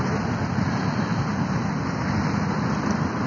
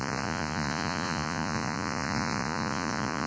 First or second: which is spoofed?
second